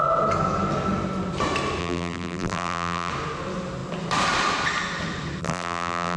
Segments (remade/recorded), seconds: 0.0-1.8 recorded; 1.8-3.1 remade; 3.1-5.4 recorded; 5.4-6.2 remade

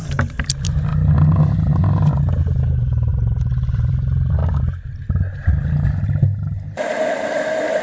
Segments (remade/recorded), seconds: 0.0-0.9 remade; 0.9-3.1 recorded; 3.1-4.4 remade; 4.4-6.8 recorded; 6.8-7.8 remade

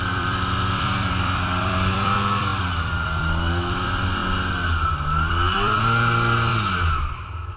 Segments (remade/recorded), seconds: 0.0-6.5 remade; 6.5-7.1 recorded; 7.1-7.6 remade

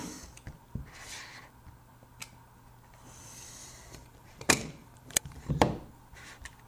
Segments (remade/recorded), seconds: 0.0-3.6 recorded; 3.6-5.5 remade; 5.5-6.7 recorded